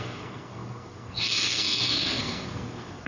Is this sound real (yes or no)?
no